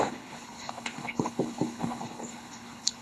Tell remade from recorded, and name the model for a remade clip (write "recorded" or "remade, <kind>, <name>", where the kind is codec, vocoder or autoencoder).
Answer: remade, codec, HILCodec